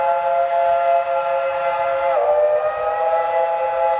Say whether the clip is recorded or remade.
recorded